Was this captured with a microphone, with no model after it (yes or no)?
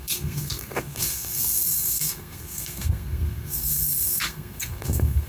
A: no